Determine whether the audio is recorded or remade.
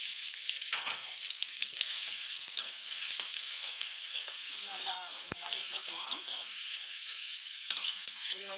remade